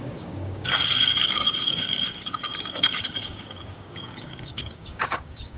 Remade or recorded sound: remade